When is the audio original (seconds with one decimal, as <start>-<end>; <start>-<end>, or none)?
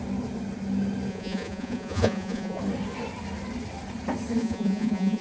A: 0.0-1.1; 2.6-4.4